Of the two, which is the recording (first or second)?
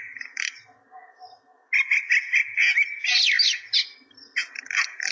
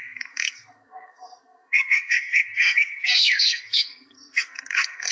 first